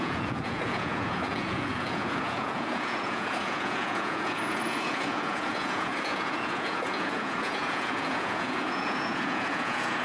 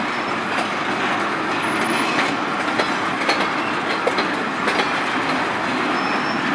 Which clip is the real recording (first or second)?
second